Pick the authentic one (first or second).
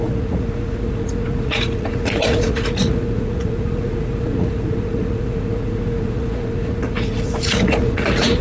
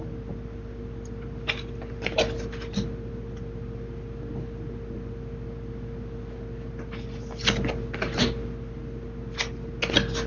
second